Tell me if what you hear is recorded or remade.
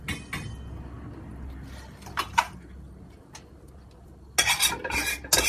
recorded